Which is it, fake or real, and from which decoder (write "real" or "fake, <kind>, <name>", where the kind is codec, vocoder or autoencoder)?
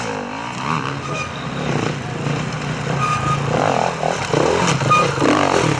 real